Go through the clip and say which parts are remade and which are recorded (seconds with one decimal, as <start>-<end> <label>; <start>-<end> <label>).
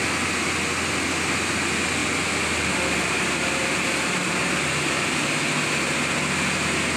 0.0-2.0 recorded; 2.0-4.3 remade; 4.3-7.0 recorded